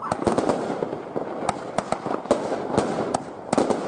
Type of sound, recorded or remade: recorded